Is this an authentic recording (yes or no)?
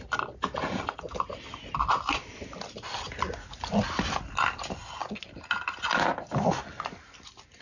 yes